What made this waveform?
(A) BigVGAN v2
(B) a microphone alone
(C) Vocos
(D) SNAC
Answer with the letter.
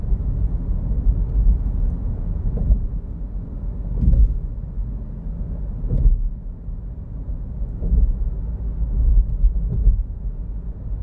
B